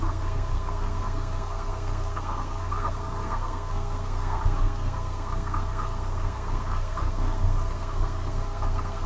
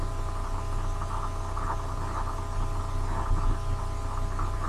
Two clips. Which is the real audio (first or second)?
second